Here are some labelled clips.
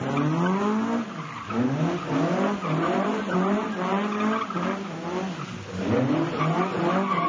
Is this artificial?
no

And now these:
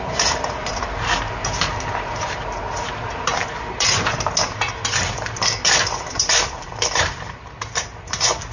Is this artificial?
yes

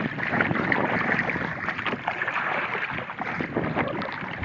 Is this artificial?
no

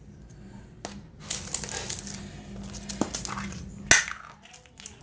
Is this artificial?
no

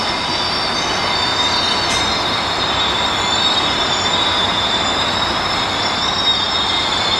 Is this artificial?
no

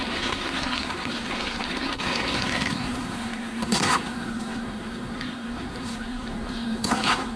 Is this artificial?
yes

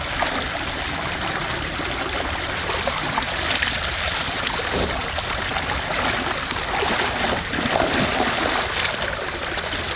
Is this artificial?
no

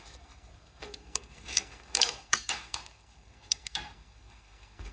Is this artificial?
yes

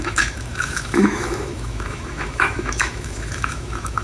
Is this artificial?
yes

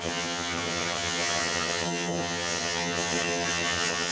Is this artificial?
yes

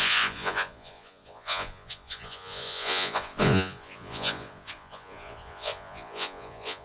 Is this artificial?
yes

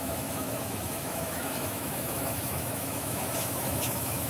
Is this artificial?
yes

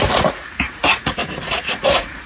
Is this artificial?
yes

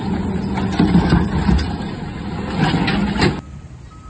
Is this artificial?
no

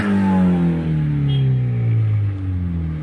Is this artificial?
no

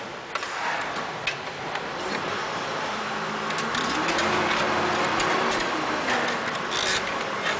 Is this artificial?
no